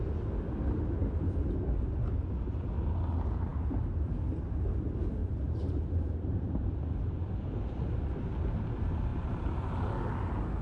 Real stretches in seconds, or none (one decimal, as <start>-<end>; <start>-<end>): 0.0-5.2; 6.8-9.1; 9.7-10.6